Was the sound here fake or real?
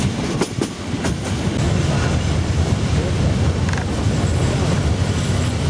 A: real